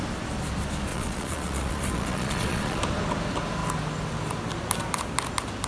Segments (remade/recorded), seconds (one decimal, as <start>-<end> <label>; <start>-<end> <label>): 0.0-0.9 recorded; 0.9-2.8 remade; 2.8-5.7 recorded